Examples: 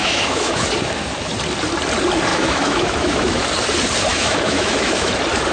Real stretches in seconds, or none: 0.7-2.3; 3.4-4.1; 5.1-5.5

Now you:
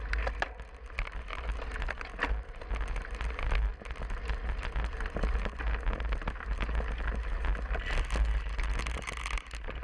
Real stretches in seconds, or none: 0.0-9.8

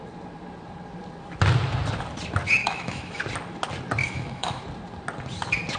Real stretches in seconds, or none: 0.0-2.6; 3.2-4.0; 4.6-5.8